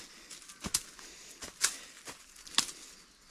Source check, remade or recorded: recorded